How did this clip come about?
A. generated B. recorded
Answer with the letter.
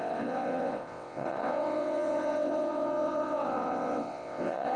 A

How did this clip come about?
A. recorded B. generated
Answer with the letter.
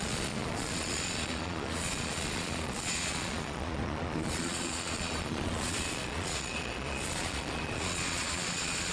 B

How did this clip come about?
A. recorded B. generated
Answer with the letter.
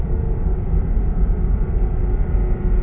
A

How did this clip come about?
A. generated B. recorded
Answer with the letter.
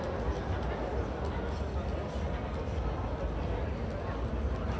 B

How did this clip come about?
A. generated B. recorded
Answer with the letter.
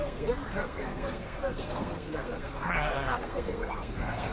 A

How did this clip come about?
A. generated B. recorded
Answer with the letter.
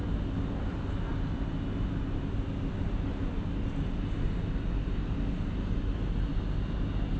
B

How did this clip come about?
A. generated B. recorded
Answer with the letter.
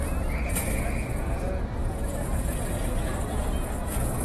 A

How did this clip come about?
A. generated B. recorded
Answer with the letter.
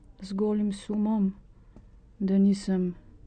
B